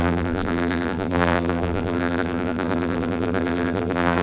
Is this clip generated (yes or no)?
yes